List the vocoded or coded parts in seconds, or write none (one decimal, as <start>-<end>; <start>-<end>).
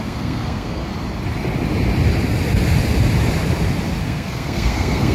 0.0-0.9; 4.0-5.1